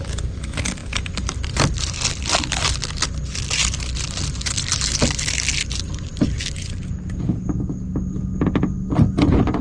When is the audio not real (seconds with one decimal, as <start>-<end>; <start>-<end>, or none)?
none